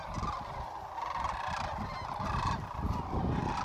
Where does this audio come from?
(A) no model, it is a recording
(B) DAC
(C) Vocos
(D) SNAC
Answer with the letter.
A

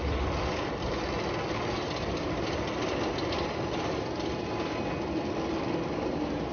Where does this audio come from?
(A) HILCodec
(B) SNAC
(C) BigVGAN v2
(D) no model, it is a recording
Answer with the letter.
D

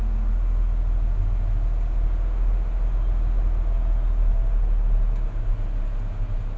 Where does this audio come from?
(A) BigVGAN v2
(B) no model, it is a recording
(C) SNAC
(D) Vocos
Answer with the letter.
B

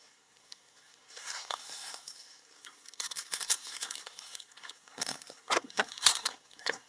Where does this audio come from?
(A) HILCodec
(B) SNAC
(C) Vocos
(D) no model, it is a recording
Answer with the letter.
B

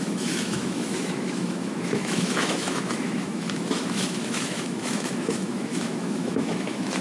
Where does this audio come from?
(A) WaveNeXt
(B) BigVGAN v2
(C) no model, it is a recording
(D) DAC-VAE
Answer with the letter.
D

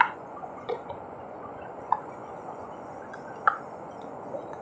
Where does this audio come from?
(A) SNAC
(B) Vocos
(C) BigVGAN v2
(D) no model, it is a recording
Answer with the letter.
B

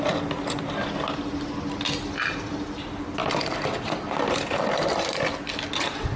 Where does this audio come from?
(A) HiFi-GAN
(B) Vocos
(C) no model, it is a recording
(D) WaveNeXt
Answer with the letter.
C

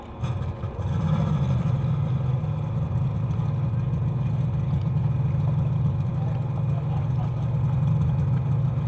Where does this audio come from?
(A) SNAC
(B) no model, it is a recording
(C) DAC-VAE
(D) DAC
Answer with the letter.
B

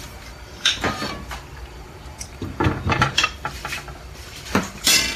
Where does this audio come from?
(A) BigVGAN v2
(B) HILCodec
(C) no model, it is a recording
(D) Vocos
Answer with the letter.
A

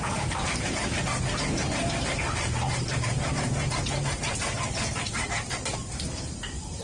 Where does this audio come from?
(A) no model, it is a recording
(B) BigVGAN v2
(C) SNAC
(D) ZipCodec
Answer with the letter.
B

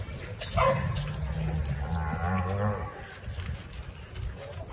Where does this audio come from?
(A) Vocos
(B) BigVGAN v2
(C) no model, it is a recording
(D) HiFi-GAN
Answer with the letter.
C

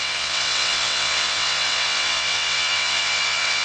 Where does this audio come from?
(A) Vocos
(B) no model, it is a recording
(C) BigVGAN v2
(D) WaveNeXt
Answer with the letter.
D